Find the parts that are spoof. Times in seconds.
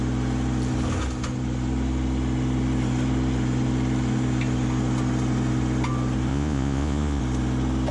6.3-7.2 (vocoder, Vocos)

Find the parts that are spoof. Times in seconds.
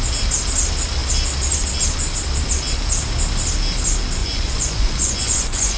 4.2-5.8 (vocoder, Vocos)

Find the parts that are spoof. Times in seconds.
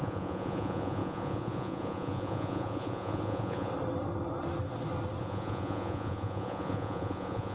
0.0-3.7 (vocoder, Vocos); 5.2-7.5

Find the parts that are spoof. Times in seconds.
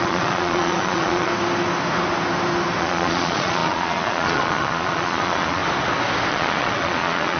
0.0-1.3 (vocoder, Vocos); 2.8-5.6; 6.3-7.4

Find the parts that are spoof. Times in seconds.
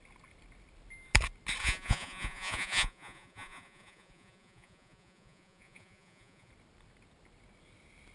1.6-6.5 (vocoder, Vocos)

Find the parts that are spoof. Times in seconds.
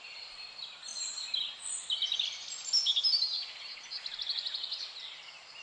4.3-4.8 (vocoder, Vocos)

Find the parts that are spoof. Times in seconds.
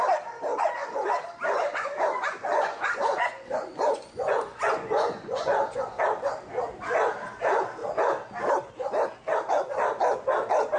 0.5-1.1 (vocoder, Vocos); 1.7-5.8